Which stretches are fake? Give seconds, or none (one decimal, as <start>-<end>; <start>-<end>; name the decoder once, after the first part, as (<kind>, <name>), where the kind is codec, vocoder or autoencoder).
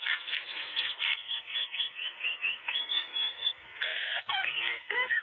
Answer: 0.0-5.2 (codec, SNAC)